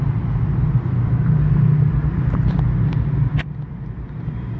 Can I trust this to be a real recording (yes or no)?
yes